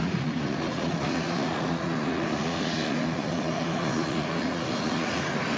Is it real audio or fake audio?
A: fake